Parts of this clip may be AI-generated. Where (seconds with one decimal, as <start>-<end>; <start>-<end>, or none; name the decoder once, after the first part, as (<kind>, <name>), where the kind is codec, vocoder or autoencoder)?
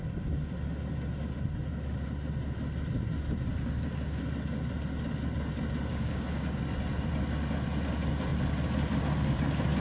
3.5-4.2 (codec, DAC); 5.9-6.6